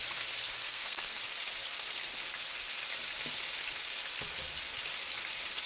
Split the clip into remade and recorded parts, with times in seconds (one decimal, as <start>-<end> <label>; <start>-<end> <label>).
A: 0.0-0.6 recorded; 0.6-1.2 remade; 1.2-5.7 recorded